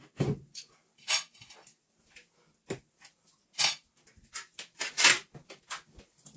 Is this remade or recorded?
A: recorded